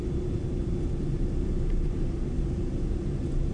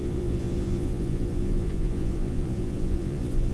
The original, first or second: first